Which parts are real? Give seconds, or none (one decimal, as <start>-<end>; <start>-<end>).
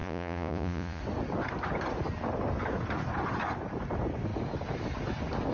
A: 1.0-5.5